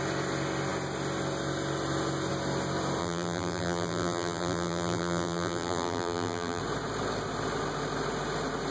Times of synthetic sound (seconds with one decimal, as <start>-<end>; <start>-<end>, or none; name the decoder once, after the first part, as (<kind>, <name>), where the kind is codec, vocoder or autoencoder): 3.0-6.6 (vocoder, BigVGAN v2)